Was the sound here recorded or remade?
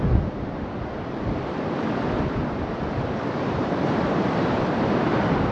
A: remade